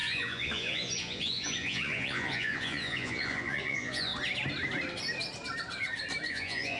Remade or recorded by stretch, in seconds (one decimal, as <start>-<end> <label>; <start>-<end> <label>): 0.0-4.1 remade; 4.1-6.3 recorded; 6.3-6.8 remade